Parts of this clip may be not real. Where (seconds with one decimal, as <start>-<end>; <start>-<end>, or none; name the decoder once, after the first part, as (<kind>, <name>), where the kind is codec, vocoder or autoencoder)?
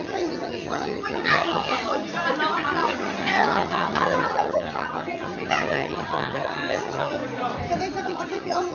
0.0-2.0 (vocoder, HiFi-GAN); 2.5-7.2; 8.0-8.7